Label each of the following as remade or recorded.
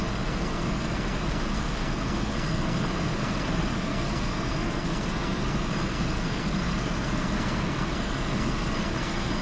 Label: remade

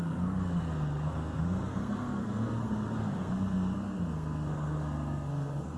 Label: remade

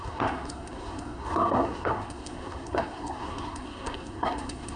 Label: remade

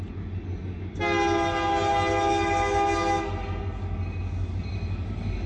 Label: recorded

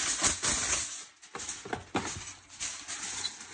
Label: recorded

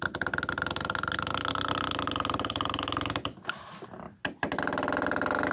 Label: recorded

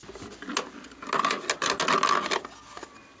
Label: recorded